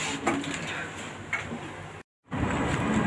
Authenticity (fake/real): real